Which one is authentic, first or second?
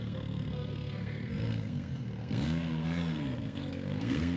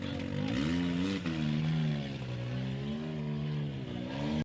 second